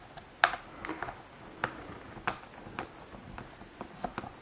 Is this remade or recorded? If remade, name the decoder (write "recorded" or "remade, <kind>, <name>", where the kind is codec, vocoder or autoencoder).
recorded